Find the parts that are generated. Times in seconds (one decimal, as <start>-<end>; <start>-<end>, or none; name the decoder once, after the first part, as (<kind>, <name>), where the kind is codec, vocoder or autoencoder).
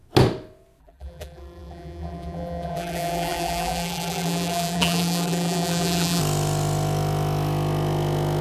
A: 0.8-6.2 (vocoder, BigVGAN v2)